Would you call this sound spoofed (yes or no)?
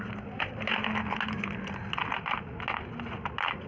no